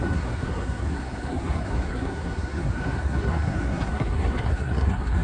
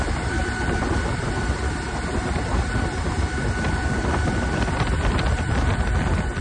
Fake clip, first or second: first